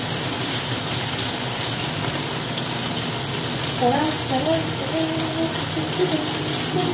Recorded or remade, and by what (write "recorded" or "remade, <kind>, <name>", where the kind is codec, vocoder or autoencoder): recorded